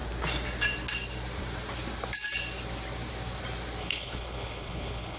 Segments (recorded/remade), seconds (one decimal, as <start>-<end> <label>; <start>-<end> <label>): 0.0-3.8 recorded; 3.8-5.2 remade